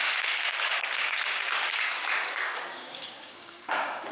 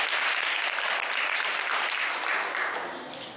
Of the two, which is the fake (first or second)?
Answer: first